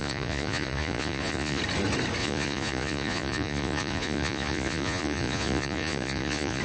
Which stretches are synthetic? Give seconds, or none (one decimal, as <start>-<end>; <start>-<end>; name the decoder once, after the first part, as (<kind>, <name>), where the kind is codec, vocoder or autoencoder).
0.0-1.6 (vocoder, Vocos); 2.2-6.6